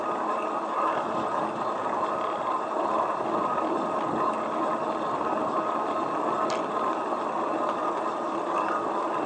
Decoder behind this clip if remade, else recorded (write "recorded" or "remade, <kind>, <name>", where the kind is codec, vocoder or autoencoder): recorded